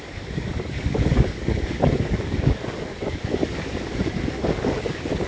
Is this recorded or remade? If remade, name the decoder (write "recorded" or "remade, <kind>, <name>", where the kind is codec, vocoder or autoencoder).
remade, codec, DAC